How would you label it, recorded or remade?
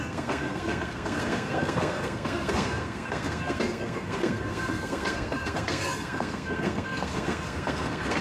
remade